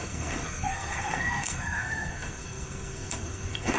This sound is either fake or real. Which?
fake